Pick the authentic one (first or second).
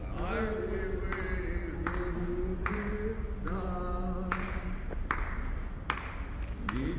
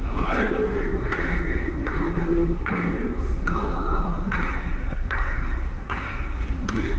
first